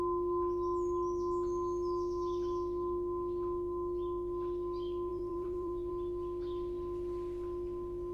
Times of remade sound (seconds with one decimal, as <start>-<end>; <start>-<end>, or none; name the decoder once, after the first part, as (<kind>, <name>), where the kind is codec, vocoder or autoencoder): 5.1-5.9 (vocoder, BigVGAN v2)